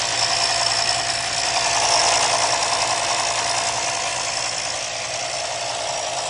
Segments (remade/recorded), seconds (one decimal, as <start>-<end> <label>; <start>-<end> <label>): 0.0-6.3 recorded